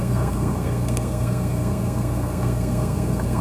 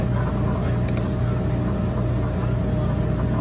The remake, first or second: first